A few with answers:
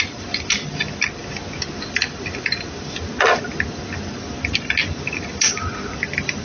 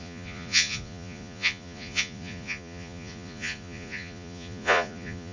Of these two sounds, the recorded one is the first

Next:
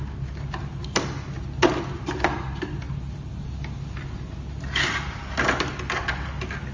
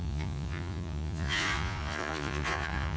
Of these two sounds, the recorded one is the first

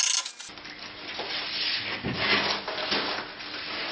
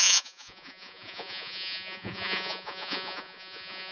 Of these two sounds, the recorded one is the first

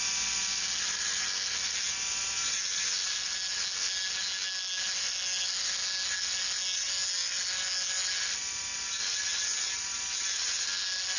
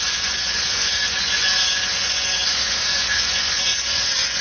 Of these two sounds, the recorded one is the first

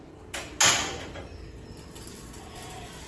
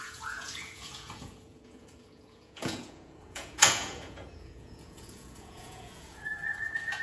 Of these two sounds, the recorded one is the first